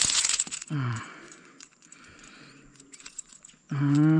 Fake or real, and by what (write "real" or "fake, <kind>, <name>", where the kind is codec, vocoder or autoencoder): fake, vocoder, Vocos